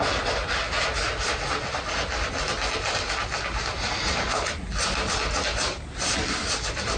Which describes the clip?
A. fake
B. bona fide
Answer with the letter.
B